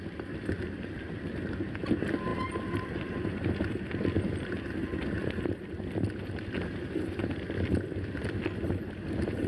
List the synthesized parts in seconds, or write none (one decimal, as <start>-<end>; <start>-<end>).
none